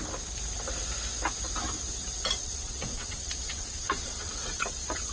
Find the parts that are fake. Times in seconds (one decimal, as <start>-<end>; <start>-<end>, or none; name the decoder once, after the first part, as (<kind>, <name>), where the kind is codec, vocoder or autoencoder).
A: 2.4-5.1 (vocoder, WaveNeXt)